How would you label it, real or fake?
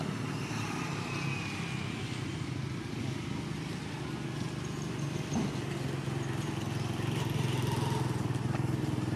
real